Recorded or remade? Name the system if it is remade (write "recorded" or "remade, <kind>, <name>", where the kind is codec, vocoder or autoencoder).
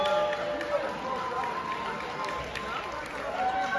recorded